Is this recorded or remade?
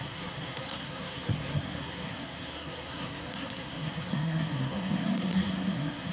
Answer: remade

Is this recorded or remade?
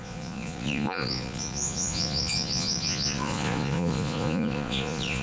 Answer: remade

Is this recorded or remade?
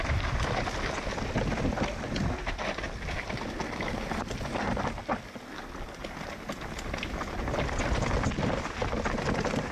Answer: recorded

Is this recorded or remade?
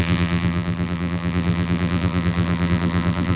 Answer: remade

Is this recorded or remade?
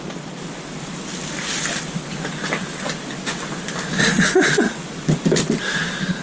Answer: recorded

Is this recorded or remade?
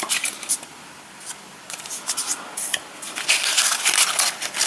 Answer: recorded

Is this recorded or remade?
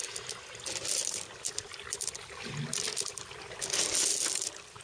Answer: recorded